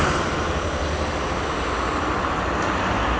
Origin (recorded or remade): recorded